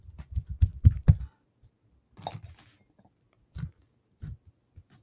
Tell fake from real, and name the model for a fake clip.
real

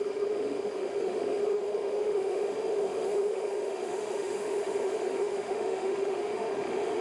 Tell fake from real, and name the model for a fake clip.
fake, autoencoder, DAC-VAE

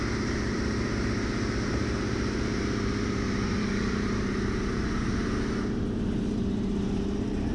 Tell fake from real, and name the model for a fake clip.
fake, vocoder, BigVGAN v2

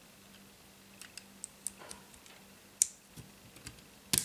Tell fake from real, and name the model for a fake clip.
real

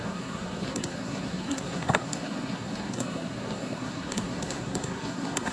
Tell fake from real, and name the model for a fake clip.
fake, codec, SNAC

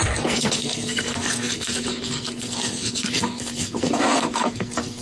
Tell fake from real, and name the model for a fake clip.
fake, codec, SNAC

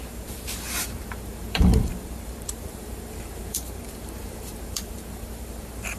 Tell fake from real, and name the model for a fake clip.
fake, vocoder, BigVGAN v2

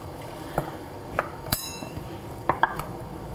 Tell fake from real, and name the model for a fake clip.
fake, codec, DAC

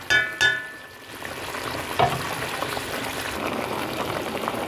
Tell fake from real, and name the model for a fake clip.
real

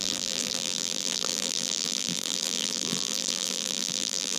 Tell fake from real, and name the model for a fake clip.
fake, vocoder, BigVGAN v2